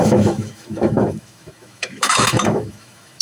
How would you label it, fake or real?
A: fake